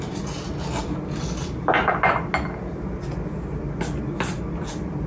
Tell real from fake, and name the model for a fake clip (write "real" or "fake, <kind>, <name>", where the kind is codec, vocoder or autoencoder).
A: real